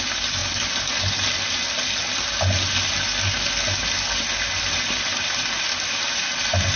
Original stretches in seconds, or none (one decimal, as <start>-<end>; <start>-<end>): 0.0-6.8